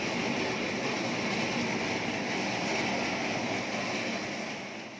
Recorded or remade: recorded